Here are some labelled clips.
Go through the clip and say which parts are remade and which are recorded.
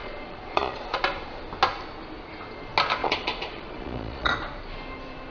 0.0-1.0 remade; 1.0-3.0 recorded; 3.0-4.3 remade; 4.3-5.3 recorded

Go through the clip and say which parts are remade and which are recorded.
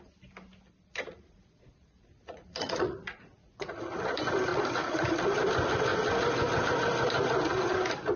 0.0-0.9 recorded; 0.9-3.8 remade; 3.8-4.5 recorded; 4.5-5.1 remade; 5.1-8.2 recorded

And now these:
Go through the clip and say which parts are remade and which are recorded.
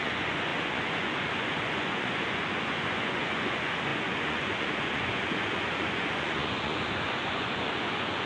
0.0-8.3 remade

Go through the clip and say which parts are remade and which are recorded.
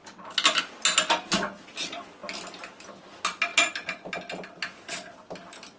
0.0-5.8 recorded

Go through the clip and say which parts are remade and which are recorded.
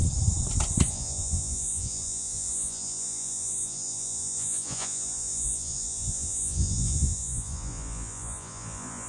0.0-0.9 recorded; 0.9-9.1 remade